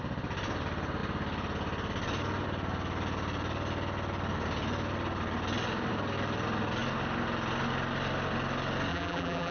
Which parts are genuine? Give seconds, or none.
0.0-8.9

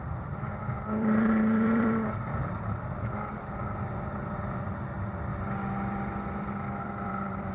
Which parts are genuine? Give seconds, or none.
2.3-3.9; 5.3-6.8

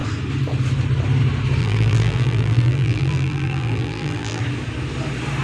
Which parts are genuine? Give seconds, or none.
0.0-1.6; 4.4-5.4

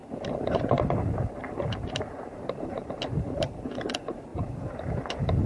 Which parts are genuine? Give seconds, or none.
none

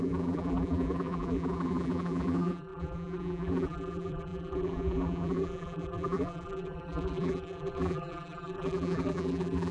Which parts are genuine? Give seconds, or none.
none

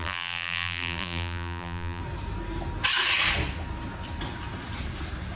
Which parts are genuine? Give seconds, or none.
2.0-5.4

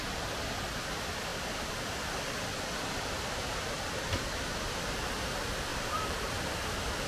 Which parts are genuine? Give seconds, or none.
0.0-5.7; 6.2-7.1